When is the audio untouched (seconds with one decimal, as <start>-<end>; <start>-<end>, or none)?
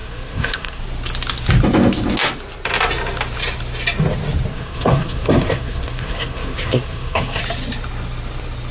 0.8-4.5; 7.4-8.7